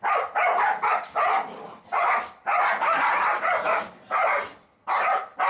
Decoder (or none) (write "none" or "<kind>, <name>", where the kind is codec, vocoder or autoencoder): vocoder, BigVGAN v2